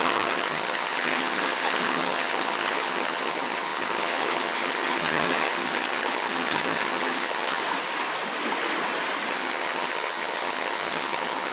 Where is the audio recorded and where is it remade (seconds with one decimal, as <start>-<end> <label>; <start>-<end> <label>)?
0.0-7.6 remade; 7.6-9.3 recorded; 9.3-11.5 remade

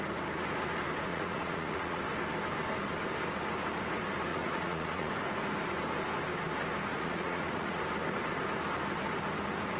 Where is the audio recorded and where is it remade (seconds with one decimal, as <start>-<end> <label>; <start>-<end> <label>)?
0.0-1.1 recorded; 1.1-2.0 remade; 2.0-4.3 recorded; 4.3-5.1 remade; 5.1-6.9 recorded; 6.9-7.8 remade; 7.8-9.8 recorded